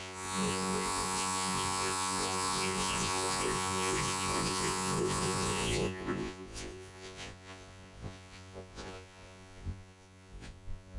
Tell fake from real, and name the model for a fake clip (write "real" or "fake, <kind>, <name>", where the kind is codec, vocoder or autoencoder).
fake, vocoder, Vocos